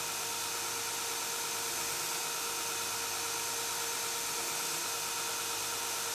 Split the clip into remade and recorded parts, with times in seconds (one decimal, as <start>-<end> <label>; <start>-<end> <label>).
0.0-6.1 recorded